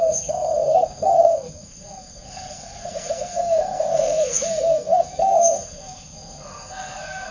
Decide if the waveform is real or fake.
fake